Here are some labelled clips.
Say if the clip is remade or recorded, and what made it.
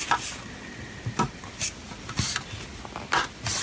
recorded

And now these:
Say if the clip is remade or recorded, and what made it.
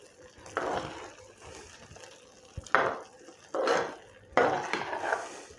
recorded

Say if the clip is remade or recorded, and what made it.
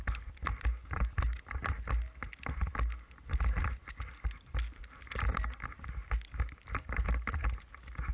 recorded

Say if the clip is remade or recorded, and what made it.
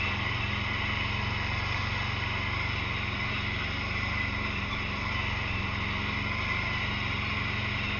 recorded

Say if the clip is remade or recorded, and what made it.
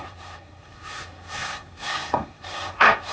remade, codec, SNAC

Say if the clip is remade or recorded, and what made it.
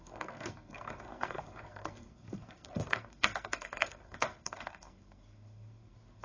remade, codec, SNAC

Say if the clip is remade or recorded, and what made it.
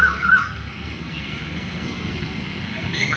remade, codec, SNAC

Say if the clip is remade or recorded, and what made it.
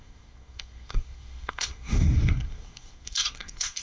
remade, codec, SNAC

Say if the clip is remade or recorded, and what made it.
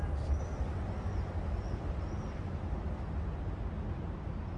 recorded